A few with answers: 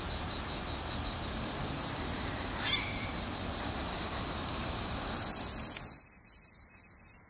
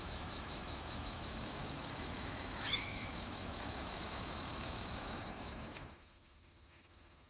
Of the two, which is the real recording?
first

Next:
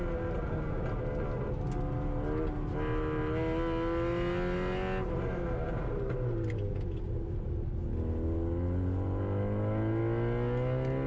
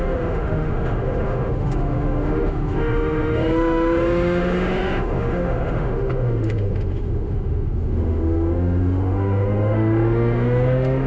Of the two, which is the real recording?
first